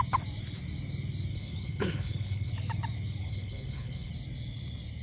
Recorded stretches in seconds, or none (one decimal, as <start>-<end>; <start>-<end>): 0.0-1.3; 2.5-3.2; 4.1-5.0